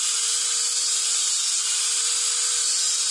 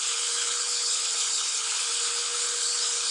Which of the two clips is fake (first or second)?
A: second